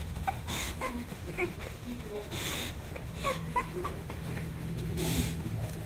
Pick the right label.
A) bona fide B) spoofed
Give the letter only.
B